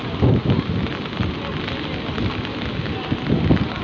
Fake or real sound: real